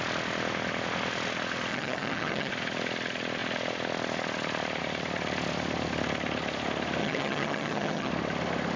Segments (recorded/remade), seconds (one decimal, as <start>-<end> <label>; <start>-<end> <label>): 0.0-1.7 recorded; 1.7-2.5 remade; 2.5-7.0 recorded; 7.0-8.1 remade; 8.1-8.8 recorded